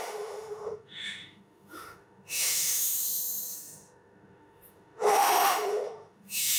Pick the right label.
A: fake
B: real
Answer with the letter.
A